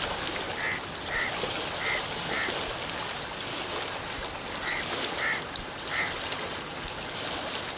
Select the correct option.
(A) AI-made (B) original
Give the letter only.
B